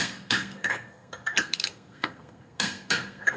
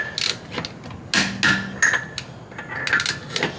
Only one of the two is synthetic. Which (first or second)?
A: first